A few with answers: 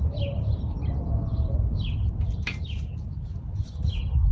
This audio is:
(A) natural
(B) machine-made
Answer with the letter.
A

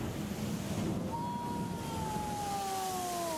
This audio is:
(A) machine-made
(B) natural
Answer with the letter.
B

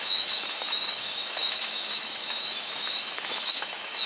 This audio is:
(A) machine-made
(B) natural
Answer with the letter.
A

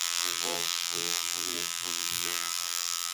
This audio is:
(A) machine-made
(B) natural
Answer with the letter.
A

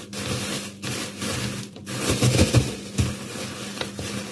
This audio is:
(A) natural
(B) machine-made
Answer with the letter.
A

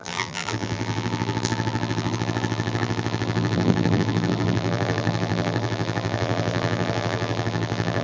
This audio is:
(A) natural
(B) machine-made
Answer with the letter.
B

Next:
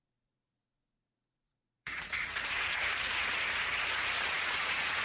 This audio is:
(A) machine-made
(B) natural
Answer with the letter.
A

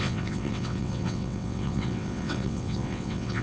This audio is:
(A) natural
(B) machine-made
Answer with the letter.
B